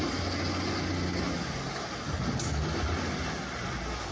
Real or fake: real